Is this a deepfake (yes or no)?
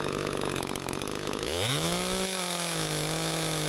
yes